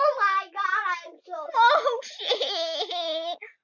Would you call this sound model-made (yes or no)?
no